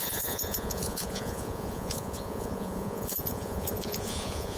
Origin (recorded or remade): remade